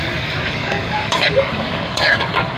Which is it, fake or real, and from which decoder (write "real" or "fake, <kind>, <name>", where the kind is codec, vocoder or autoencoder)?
fake, codec, DAC